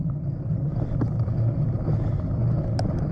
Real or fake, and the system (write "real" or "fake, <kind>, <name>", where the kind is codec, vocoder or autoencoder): real